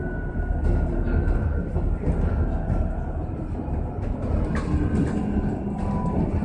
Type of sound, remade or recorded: recorded